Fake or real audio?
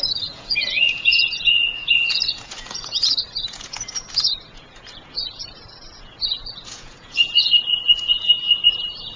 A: fake